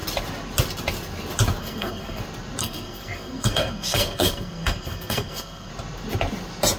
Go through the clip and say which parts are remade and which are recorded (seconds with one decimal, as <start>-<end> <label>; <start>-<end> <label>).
0.0-1.6 recorded; 1.6-2.2 remade; 2.2-2.6 recorded; 2.6-5.7 remade; 5.7-6.8 recorded